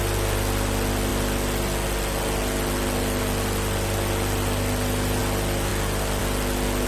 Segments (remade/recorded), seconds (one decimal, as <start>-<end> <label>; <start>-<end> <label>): 0.0-6.9 recorded